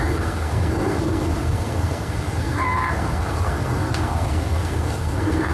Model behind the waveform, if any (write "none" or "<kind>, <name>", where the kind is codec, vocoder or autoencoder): codec, SNAC